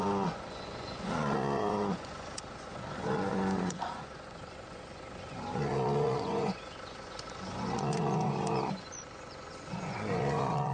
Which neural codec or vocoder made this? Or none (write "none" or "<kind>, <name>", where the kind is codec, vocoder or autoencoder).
vocoder, Vocos